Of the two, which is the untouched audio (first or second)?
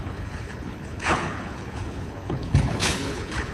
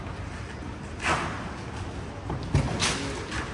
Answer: second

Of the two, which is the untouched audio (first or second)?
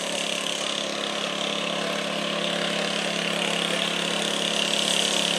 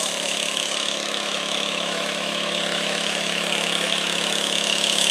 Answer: first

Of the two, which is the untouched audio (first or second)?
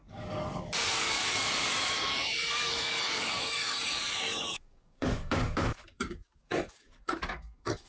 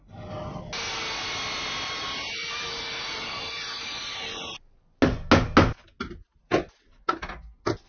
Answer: second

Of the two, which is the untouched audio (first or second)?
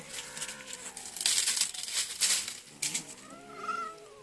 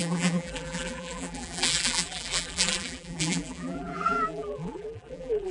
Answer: first